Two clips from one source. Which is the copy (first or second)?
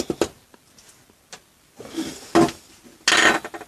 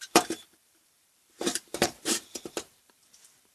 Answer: second